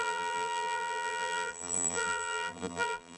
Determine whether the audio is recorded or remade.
remade